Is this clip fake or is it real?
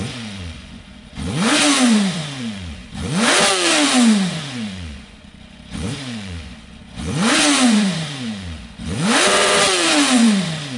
fake